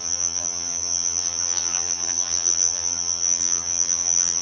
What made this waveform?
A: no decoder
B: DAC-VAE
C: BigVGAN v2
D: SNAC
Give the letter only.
C